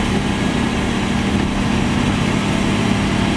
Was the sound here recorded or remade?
recorded